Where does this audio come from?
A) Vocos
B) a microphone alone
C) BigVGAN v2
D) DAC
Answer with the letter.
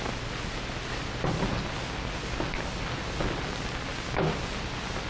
B